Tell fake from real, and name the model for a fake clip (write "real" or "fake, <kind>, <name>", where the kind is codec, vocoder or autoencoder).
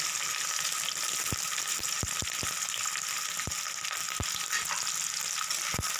real